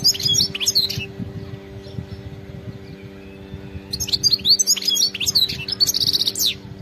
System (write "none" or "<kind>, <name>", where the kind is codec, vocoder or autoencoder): none